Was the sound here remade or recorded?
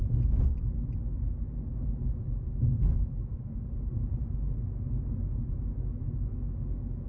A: recorded